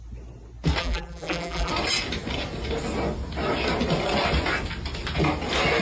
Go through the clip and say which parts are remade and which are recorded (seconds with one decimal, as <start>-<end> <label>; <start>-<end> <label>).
0.0-0.8 recorded; 0.8-1.7 remade; 1.7-5.8 recorded